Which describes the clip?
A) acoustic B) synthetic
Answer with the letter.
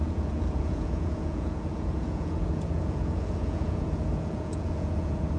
B